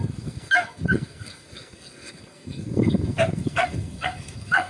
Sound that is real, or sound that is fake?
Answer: fake